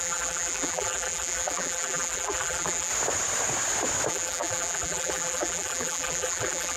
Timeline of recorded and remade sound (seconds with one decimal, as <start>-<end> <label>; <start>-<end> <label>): 0.0-2.9 remade; 2.9-4.1 recorded; 4.1-6.8 remade